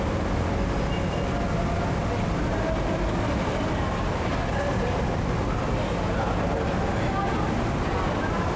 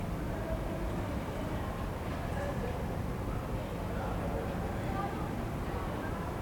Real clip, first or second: first